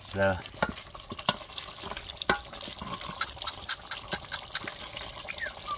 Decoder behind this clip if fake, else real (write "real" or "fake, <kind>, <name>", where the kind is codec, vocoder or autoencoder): real